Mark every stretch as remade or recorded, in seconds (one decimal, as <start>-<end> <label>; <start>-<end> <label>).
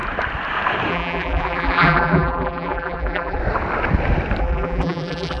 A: 0.0-0.9 recorded; 0.9-3.4 remade; 3.4-4.4 recorded; 4.4-5.4 remade